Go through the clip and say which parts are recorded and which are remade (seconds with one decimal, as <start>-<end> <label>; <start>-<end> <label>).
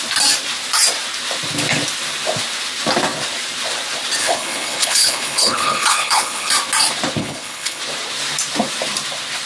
0.0-4.2 recorded; 4.2-6.5 remade; 6.5-7.2 recorded; 7.2-7.8 remade; 7.8-9.5 recorded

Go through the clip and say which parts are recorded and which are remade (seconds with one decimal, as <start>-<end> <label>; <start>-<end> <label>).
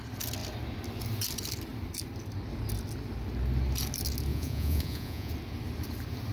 0.0-4.3 recorded; 4.3-5.3 remade; 5.3-6.3 recorded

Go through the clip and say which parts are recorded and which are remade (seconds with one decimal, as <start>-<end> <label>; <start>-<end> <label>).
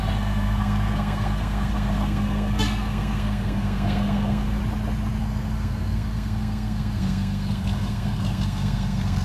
0.0-4.6 remade; 4.6-5.2 recorded; 5.2-9.2 remade